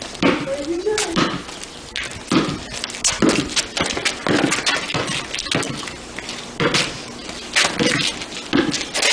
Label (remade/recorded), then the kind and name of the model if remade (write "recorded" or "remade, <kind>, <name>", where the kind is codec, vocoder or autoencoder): recorded